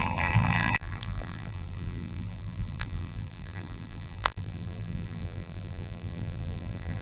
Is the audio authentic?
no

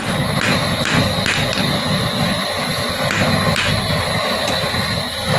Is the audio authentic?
yes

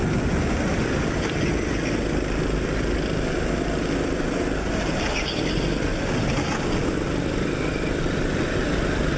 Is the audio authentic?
yes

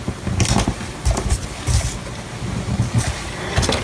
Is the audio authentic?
yes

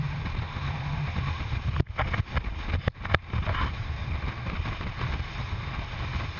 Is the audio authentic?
yes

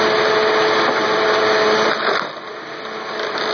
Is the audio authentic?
yes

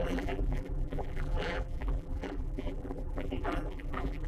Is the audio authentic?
no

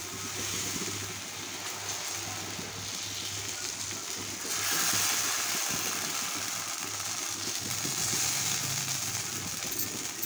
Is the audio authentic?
yes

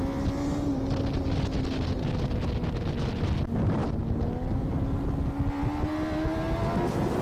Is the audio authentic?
yes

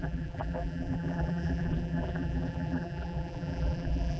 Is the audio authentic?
no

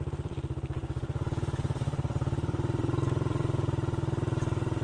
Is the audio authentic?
no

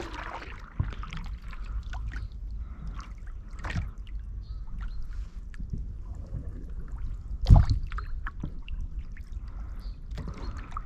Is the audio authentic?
yes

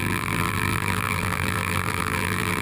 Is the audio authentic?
no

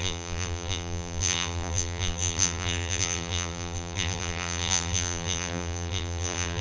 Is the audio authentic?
no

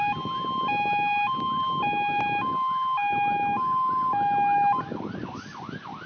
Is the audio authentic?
yes